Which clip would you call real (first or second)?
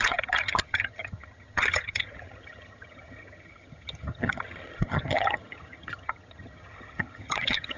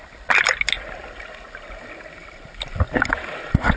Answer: second